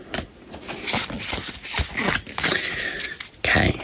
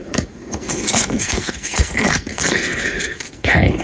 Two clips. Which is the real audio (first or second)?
first